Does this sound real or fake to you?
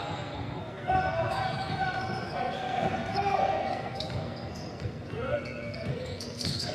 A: fake